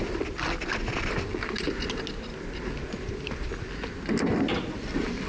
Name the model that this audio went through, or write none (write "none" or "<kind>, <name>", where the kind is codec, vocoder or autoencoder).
none